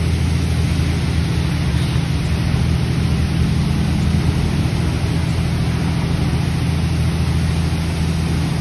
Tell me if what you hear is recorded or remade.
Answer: recorded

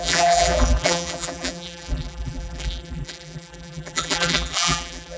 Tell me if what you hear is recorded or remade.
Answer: remade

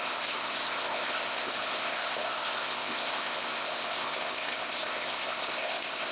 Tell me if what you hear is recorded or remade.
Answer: remade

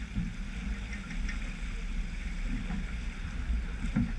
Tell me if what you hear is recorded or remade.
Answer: recorded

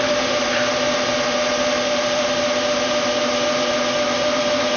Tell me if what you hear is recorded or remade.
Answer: remade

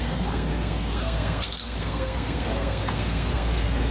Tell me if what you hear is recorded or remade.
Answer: remade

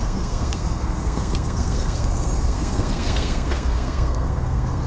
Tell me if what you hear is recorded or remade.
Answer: remade